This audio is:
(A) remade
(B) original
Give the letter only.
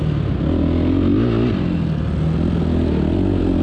B